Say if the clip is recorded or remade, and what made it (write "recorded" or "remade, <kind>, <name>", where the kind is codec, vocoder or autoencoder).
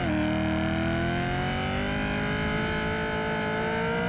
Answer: recorded